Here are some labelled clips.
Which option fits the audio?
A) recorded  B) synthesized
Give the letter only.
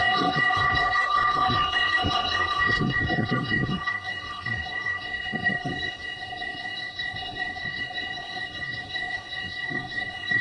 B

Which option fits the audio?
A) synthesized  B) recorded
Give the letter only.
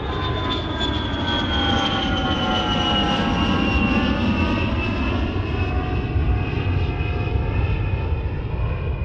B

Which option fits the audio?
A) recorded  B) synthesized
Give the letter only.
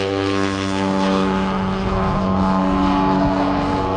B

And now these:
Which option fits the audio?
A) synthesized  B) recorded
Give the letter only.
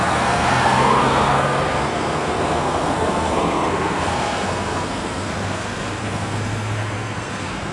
A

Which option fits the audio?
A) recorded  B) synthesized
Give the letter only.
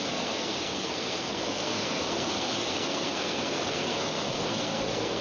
B